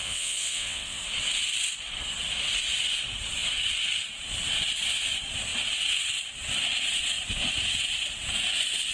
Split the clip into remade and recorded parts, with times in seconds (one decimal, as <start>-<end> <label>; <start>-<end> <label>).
0.0-1.0 remade; 1.0-8.9 recorded